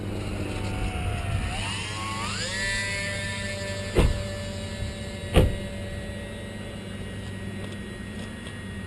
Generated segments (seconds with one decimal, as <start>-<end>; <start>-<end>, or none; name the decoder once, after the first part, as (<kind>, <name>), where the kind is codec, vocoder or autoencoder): none